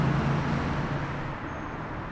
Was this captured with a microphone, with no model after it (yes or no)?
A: yes